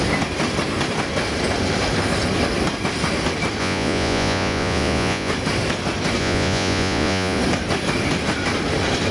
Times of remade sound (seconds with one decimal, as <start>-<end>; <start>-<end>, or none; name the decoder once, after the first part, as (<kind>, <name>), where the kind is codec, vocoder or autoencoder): 3.6-5.3 (vocoder, Vocos); 6.2-7.4